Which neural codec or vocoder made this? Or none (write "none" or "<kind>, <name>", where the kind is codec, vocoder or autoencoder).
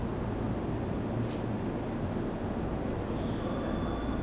none